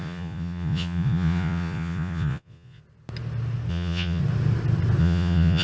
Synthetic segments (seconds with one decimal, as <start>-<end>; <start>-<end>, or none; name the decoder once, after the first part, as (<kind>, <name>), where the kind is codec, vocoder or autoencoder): 0.0-2.8 (vocoder, Vocos); 3.7-4.2; 5.0-5.6